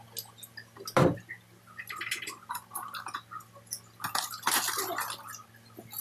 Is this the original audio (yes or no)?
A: yes